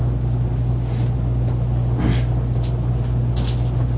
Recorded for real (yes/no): yes